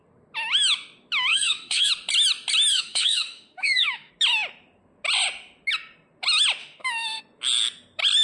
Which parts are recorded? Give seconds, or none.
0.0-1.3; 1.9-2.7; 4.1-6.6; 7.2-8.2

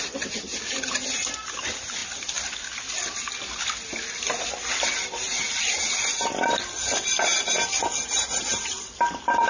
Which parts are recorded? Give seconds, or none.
0.0-9.5